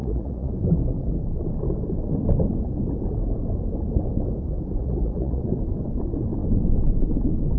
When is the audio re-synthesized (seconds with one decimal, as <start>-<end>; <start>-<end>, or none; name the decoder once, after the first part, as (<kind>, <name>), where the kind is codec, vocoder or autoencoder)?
0.0-0.5 (vocoder, Vocos); 4.8-5.4